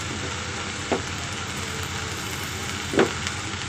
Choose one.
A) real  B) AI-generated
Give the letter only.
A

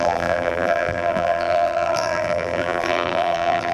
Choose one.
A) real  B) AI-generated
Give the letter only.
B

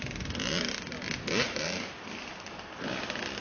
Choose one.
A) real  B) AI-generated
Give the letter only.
A